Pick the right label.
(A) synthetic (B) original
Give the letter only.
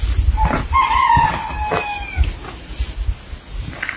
B